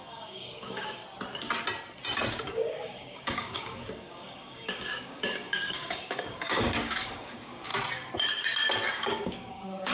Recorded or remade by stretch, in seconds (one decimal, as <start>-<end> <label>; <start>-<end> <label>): 0.0-1.0 remade; 1.0-2.3 recorded; 2.3-7.7 remade; 7.7-8.9 recorded; 8.9-9.9 remade

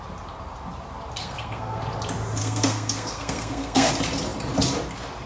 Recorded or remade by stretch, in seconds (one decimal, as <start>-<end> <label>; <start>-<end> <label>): 0.0-1.2 recorded; 1.2-1.8 remade; 1.8-2.4 recorded; 2.4-3.9 remade; 3.9-5.3 recorded

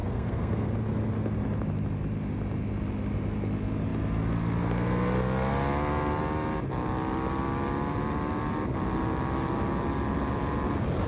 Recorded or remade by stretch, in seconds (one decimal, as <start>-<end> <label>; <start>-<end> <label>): 0.0-0.7 remade; 0.7-11.1 recorded

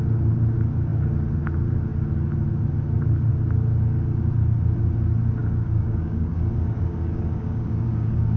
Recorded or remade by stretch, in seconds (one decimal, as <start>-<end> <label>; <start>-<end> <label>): 0.0-5.4 recorded; 5.4-8.4 remade

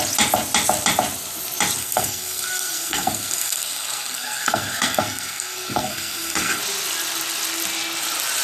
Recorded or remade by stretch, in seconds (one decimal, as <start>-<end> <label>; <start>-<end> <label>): 0.0-1.8 recorded; 1.8-6.6 remade; 6.6-8.4 recorded

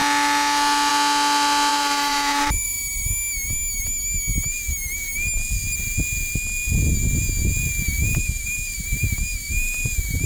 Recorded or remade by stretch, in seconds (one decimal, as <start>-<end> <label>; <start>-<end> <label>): 0.0-1.7 recorded; 1.7-2.8 remade; 2.8-8.0 recorded; 8.0-9.8 remade; 9.8-10.3 recorded

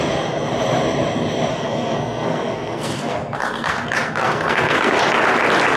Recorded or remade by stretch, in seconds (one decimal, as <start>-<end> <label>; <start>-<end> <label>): 0.0-1.5 recorded; 1.5-5.0 remade; 5.0-5.8 recorded